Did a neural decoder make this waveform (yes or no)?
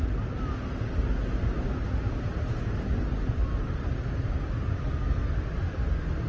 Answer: no